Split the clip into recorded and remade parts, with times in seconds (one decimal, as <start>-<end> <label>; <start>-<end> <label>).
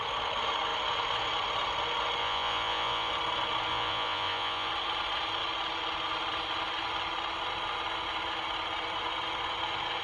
0.0-2.2 recorded; 2.2-3.1 remade; 3.1-3.7 recorded; 3.7-4.7 remade; 4.7-10.0 recorded